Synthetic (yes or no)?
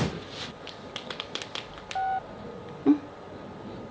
no